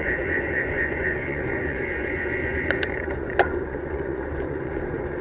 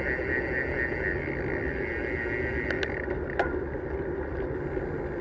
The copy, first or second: first